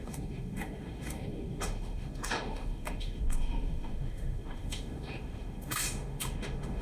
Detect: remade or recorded remade